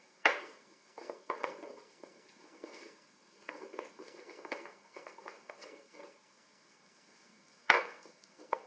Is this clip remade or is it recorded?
remade